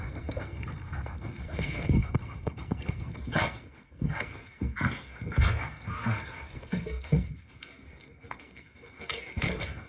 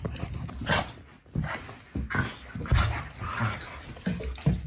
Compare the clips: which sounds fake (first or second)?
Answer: first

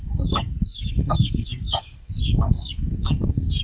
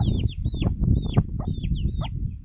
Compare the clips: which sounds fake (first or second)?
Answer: first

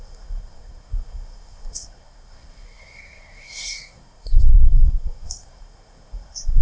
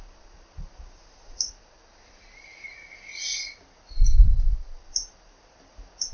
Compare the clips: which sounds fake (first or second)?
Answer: first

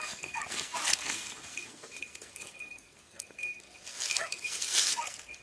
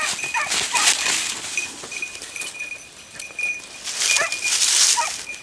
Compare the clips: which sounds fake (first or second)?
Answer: first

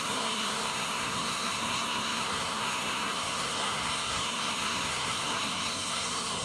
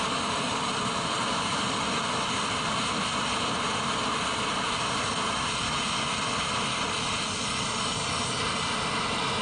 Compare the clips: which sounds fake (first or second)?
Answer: first